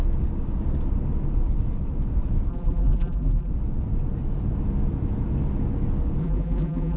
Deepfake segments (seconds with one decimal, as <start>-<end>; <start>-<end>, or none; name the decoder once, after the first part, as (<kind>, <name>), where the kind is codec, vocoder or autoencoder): 2.5-3.5 (vocoder, BigVGAN v2); 6.2-7.0